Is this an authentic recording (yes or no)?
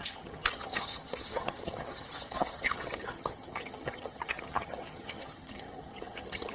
no